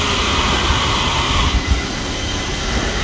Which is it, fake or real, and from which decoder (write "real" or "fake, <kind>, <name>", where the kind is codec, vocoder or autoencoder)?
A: real